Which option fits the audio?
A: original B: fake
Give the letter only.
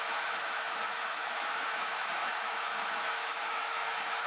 B